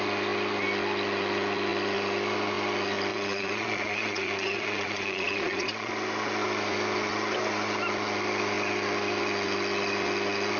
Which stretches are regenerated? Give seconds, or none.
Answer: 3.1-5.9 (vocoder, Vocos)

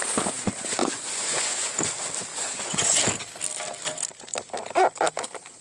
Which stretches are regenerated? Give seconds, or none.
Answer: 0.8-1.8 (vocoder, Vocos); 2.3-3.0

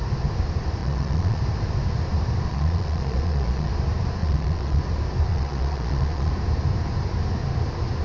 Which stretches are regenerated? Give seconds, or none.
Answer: 0.8-1.4 (vocoder, Vocos); 2.5-3.7; 4.2-4.8; 5.3-6.3